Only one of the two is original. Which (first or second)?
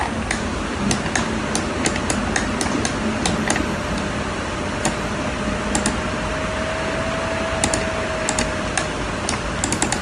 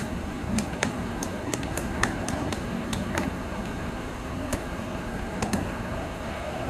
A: first